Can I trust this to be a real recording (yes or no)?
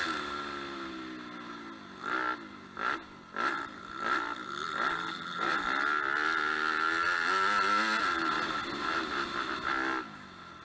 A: yes